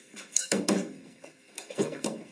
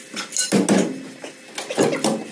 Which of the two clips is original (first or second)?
second